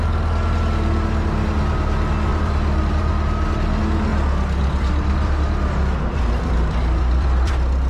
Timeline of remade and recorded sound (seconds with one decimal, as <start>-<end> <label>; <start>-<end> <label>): 0.0-2.3 recorded; 2.3-3.1 remade; 3.1-4.1 recorded; 4.1-7.5 remade; 7.5-7.9 recorded